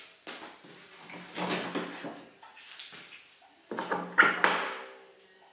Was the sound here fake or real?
real